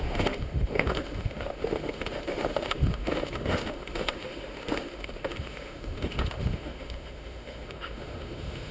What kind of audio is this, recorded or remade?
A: remade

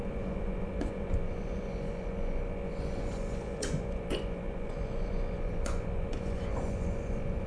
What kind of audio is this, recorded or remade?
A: remade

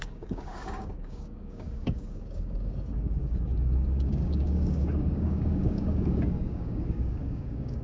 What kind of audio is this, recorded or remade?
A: remade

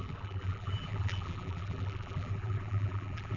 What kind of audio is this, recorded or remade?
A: remade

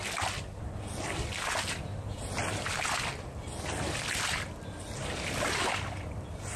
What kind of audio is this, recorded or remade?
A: recorded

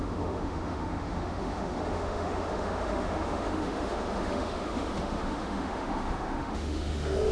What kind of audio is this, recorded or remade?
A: remade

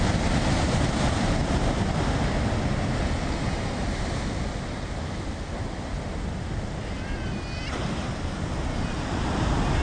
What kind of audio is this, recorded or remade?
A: recorded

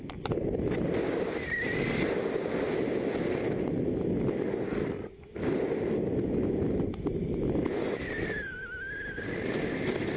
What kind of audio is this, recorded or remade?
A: recorded